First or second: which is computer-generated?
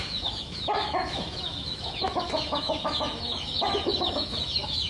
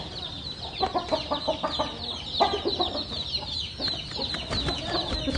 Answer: first